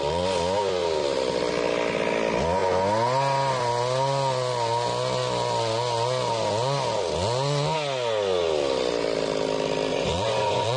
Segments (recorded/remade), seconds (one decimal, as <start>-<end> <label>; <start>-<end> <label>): 0.0-9.9 recorded; 9.9-10.8 remade